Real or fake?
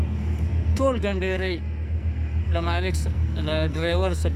fake